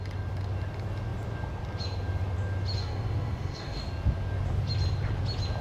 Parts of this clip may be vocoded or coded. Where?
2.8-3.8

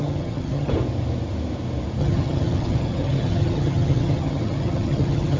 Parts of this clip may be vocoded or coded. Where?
0.0-0.7; 2.0-5.4

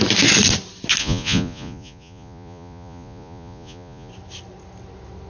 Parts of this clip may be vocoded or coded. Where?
1.0-4.1

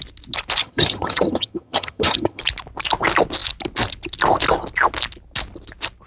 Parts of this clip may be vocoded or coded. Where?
0.6-2.4

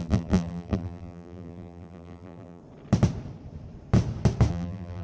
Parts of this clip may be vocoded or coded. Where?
0.0-2.6; 4.5-5.0

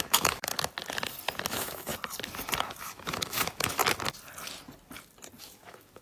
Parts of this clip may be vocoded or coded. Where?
0.0-0.5; 1.5-1.9; 2.6-3.8; 5.4-6.0

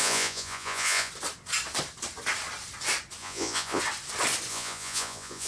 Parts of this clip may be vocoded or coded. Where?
0.0-1.1; 3.2-3.8; 4.5-5.5